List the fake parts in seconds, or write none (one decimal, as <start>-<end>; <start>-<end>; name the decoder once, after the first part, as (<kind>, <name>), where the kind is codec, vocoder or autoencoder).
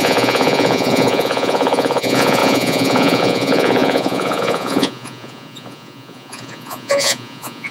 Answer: 0.0-7.7 (vocoder, Vocos)